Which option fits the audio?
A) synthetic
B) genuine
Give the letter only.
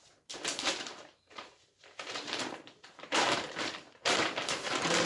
A